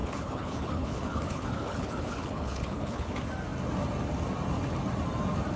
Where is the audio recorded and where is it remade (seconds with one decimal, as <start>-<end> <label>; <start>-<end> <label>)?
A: 0.0-3.1 remade; 3.1-5.6 recorded